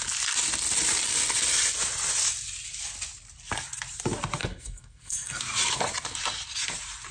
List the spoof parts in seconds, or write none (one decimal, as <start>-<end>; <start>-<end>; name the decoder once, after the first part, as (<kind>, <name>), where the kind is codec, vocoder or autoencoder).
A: 4.4-5.4 (codec, SNAC)